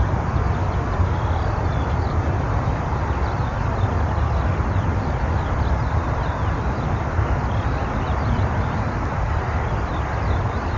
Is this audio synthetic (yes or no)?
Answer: no